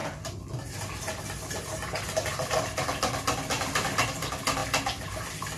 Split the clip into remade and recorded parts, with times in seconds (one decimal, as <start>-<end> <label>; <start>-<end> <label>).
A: 0.0-5.6 recorded